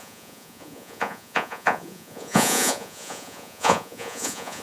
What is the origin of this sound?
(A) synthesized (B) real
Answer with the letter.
A